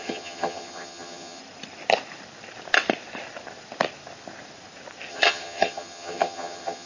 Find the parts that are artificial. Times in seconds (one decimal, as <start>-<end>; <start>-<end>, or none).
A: 0.0-1.4; 5.1-6.9